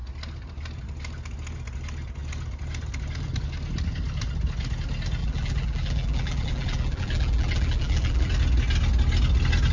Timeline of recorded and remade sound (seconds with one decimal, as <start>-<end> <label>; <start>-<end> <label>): 0.0-5.2 recorded; 5.2-8.3 remade; 8.3-9.7 recorded